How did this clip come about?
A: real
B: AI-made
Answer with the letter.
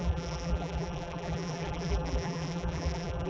B